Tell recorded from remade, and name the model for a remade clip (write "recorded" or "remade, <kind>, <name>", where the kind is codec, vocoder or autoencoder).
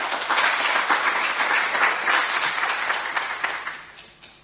recorded